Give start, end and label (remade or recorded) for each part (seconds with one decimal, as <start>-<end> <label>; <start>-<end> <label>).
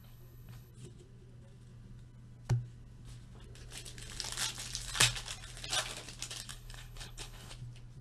0.0-0.7 remade; 0.7-6.5 recorded; 6.5-7.5 remade; 7.5-8.0 recorded